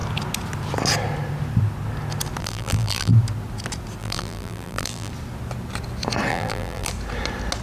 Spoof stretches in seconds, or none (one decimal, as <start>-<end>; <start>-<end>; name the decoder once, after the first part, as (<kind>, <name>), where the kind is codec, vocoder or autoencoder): 2.4-3.1 (vocoder, BigVGAN v2); 4.0-5.1; 6.3-6.9